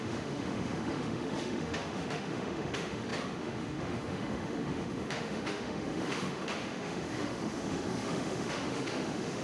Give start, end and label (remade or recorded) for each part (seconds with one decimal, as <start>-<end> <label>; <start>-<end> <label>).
0.0-9.4 remade